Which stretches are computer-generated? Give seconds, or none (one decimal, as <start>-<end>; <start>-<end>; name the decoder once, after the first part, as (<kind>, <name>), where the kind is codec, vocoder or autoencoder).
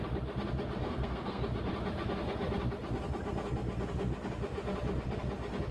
0.8-1.4 (codec, SNAC)